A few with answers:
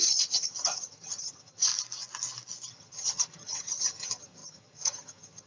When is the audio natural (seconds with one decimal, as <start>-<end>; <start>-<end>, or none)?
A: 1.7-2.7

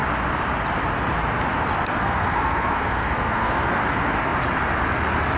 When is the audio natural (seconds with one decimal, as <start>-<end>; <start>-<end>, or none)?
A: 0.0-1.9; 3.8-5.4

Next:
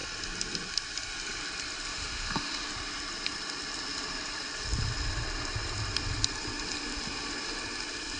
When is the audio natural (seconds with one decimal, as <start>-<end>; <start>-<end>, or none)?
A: 0.0-1.9; 2.7-8.2

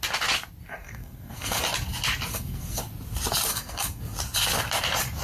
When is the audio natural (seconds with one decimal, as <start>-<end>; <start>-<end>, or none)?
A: 0.0-0.8; 1.6-2.3; 2.8-3.5; 4.0-5.2

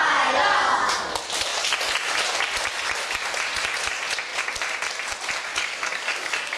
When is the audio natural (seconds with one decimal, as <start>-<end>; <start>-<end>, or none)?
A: 0.0-5.5

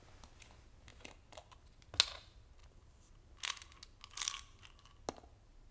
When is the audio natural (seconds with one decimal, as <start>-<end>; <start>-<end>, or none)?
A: 0.0-5.7

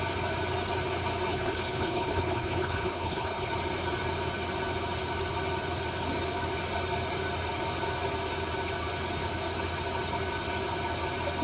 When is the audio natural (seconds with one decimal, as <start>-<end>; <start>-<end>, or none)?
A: 0.0-1.3; 3.5-11.4